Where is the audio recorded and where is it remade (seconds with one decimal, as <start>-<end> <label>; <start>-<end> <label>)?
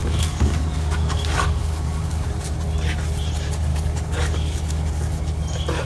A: 0.0-2.3 remade; 2.3-3.7 recorded; 3.7-5.4 remade; 5.4-5.9 recorded